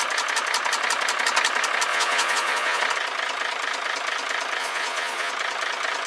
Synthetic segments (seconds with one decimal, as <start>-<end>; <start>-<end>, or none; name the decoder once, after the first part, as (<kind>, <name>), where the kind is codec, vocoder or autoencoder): 1.9-2.8 (vocoder, Vocos); 4.6-5.3